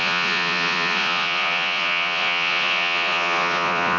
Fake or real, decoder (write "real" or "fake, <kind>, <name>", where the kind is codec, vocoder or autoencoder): fake, vocoder, Vocos